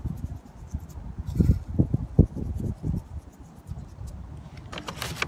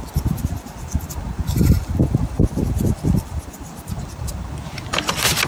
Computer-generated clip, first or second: second